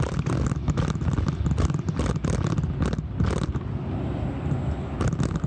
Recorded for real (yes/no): yes